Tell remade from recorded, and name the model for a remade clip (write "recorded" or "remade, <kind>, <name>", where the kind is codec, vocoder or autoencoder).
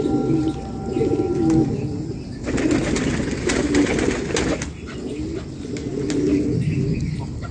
recorded